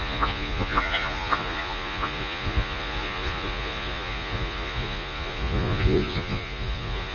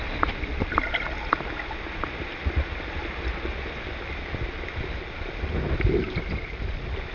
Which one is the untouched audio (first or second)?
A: second